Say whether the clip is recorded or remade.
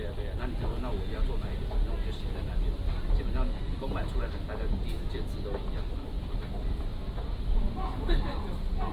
recorded